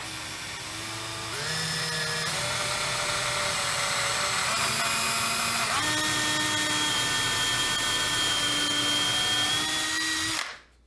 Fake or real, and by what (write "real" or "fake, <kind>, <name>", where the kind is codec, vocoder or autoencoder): real